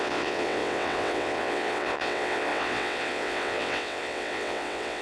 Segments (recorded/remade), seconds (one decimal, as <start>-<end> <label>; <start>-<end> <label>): 0.0-5.0 remade